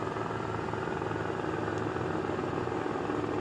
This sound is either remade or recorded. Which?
recorded